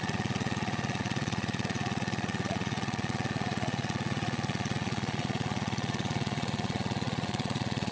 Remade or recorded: remade